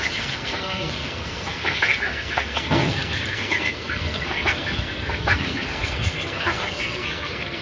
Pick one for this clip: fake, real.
fake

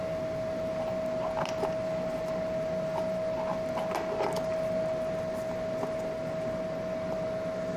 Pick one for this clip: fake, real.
real